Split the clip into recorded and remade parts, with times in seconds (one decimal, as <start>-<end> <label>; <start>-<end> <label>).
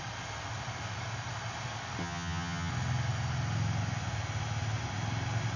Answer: 0.0-2.0 recorded; 2.0-2.7 remade; 2.7-5.6 recorded